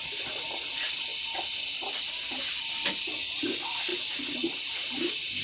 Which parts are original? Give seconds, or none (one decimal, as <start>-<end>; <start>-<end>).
0.0-5.4